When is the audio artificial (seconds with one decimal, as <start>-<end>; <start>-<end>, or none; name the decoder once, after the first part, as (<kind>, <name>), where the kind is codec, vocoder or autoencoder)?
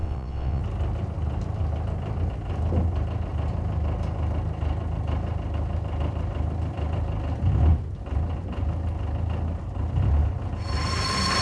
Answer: 0.0-0.6 (vocoder, WaveNeXt)